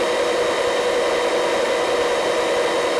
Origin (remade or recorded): recorded